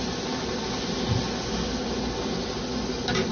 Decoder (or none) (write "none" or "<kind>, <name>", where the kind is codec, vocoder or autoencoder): none